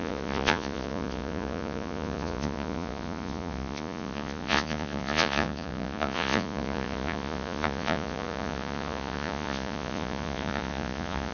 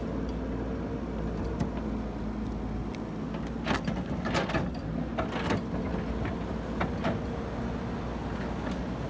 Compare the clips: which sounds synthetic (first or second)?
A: first